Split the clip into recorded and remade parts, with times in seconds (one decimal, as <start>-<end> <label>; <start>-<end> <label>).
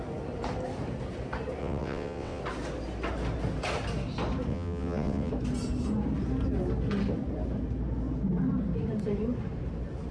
0.0-1.6 recorded; 1.6-2.4 remade; 2.4-4.5 recorded; 4.5-5.3 remade; 5.3-10.1 recorded